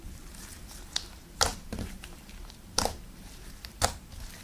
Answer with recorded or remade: remade